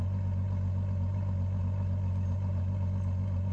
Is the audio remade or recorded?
recorded